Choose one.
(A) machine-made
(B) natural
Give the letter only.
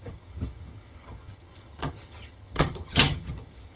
A